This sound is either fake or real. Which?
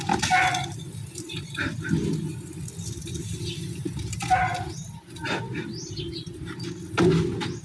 real